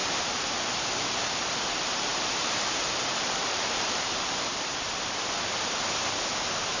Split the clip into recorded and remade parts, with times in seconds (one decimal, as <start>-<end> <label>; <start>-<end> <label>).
0.0-0.7 remade; 0.7-2.1 recorded; 2.1-5.1 remade; 5.1-6.8 recorded